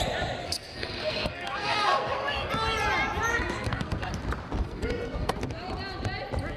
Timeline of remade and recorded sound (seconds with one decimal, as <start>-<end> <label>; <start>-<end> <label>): 0.0-0.4 recorded; 0.4-2.5 remade; 2.5-3.3 recorded; 3.3-4.1 remade; 4.1-4.6 recorded; 4.6-5.3 remade; 5.3-6.6 recorded